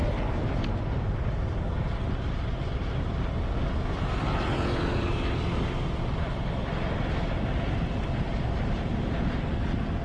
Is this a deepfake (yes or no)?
no